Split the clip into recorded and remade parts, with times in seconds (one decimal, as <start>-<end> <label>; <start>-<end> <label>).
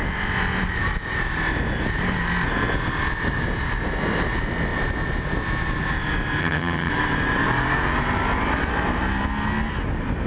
0.0-6.4 recorded; 6.4-6.9 remade; 6.9-10.3 recorded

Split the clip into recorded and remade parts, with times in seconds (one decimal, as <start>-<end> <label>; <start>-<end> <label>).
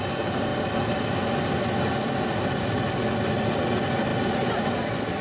0.0-5.2 recorded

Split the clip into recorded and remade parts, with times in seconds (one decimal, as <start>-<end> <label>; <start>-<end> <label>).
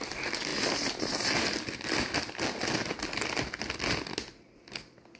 0.0-5.2 recorded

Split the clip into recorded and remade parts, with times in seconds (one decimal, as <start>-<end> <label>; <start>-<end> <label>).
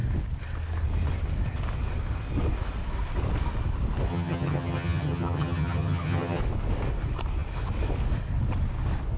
0.0-4.1 recorded; 4.1-6.4 remade; 6.4-9.2 recorded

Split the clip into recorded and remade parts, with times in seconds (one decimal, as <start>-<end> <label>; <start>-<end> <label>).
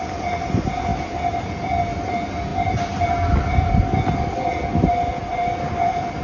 0.0-6.2 recorded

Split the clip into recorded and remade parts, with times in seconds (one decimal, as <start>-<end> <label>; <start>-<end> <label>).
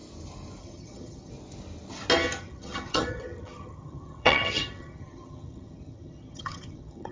0.0-0.6 recorded; 0.6-1.3 remade; 1.3-2.4 recorded; 2.4-7.1 remade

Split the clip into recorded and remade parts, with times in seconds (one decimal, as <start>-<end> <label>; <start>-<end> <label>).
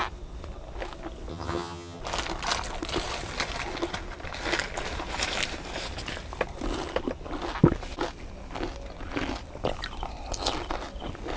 0.0-1.3 recorded; 1.3-2.0 remade; 2.0-11.4 recorded